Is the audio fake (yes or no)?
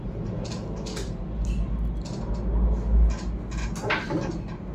no